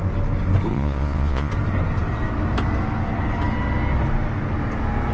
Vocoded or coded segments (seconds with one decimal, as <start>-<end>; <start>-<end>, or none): 0.7-1.5